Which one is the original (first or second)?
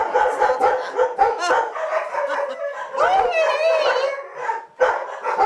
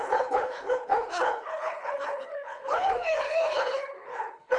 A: first